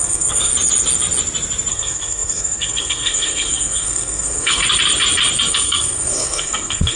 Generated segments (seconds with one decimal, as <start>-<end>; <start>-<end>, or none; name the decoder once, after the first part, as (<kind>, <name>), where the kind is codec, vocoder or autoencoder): 0.0-0.5 (codec, SNAC); 1.7-4.6; 5.5-7.0